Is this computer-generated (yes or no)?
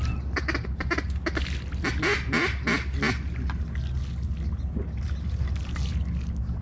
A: no